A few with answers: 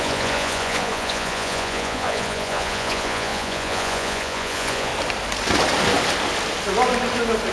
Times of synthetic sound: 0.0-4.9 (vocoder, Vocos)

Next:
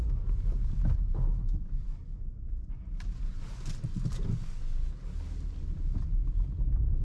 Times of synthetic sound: none

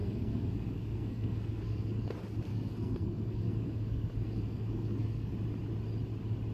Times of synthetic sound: 0.0-2.1 (codec, SNAC); 2.5-5.3